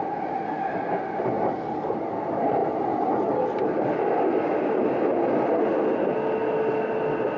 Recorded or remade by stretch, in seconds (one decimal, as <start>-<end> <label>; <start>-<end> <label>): 0.0-7.4 recorded